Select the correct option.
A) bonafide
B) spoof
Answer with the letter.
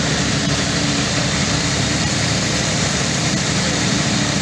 B